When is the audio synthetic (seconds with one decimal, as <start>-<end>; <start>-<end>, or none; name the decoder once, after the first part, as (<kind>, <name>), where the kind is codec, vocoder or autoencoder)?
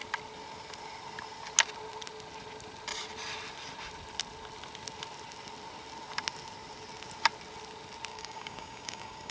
8.1-9.3 (codec, DAC)